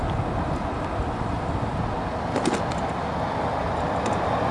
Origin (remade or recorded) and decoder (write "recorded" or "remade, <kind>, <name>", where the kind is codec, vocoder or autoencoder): recorded